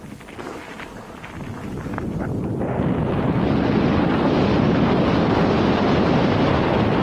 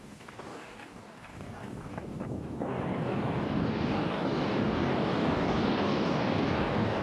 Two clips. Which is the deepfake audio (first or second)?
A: second